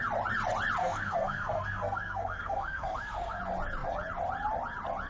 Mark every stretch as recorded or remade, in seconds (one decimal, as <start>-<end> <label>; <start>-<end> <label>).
0.0-0.8 recorded; 0.8-3.4 remade; 3.4-5.1 recorded